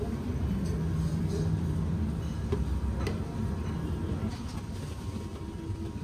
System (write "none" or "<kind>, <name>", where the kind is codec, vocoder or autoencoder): none